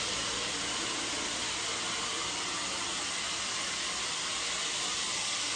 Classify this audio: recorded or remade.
recorded